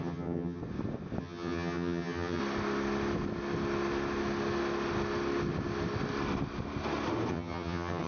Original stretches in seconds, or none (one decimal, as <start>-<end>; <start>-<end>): 0.6-1.2; 2.4-7.3